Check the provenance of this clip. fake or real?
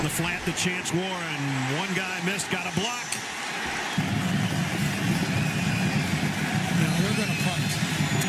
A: real